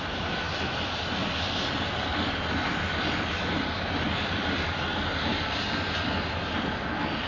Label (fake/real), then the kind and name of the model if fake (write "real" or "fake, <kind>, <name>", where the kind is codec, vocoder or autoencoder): real